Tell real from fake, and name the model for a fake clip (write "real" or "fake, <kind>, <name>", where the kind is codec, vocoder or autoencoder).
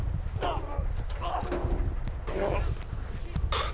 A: real